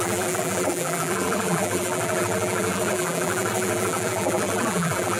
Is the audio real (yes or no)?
no